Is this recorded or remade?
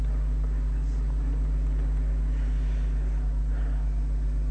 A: recorded